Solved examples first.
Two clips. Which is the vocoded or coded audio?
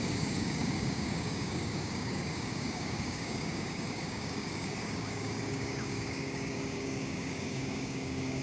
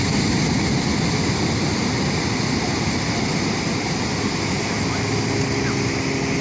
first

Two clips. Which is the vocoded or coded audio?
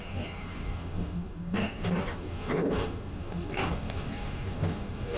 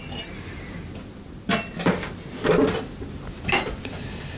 first